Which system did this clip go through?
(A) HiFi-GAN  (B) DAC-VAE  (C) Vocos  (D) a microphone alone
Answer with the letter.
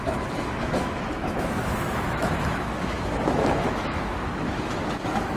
B